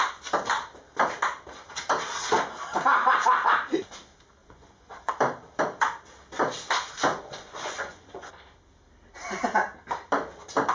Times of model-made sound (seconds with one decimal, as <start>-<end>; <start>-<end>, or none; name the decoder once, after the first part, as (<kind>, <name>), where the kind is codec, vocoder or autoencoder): 4.4-5.1 (vocoder, Vocos); 7.1-8.3